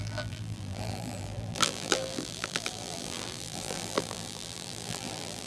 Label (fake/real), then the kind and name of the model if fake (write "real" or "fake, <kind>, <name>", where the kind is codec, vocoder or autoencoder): fake, vocoder, BigVGAN v2